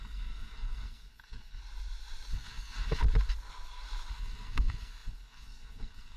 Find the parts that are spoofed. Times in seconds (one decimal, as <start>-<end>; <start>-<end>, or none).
0.0-1.6; 2.3-3.0; 4.1-6.2